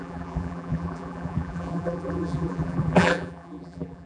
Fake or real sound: fake